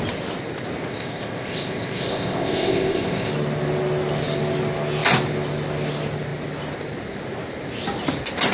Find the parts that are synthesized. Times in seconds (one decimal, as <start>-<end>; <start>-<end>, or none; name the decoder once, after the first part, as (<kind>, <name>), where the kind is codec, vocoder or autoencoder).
0.9-3.3 (codec, ZipCodec)